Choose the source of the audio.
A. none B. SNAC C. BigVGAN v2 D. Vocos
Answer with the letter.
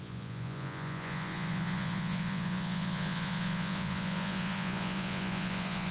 D